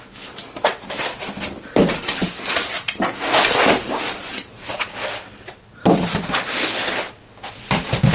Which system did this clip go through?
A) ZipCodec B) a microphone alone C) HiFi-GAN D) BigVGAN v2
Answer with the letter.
B